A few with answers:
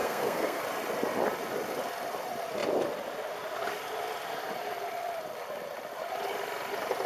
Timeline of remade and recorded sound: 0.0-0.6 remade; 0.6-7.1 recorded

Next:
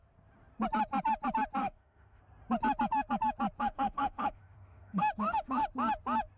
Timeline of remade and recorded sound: 0.0-1.6 recorded; 1.6-2.2 remade; 2.2-3.6 recorded; 3.6-5.7 remade; 5.7-6.4 recorded

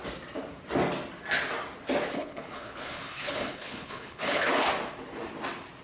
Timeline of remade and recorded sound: 0.0-2.1 recorded; 2.1-4.7 remade; 4.7-5.8 recorded

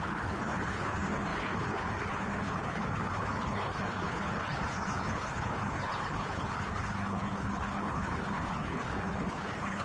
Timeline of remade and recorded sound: 0.0-9.8 remade

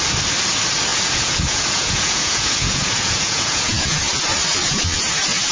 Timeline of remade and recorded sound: 0.0-0.9 recorded; 0.9-4.2 remade; 4.2-5.5 recorded

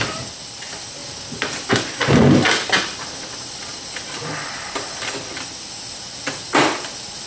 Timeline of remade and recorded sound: 0.0-7.3 recorded

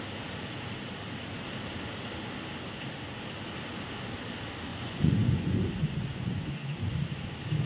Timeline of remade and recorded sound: 0.0-4.7 recorded; 4.7-7.2 remade; 7.2-7.7 recorded